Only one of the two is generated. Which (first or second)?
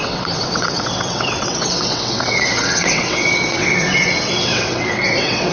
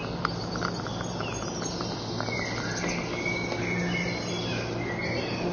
first